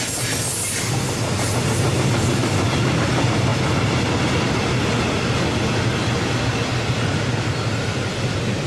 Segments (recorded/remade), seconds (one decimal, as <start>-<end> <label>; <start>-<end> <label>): 0.0-8.7 recorded